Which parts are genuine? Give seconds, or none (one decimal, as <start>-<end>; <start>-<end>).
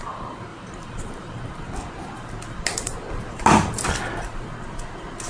0.0-0.5; 1.6-5.3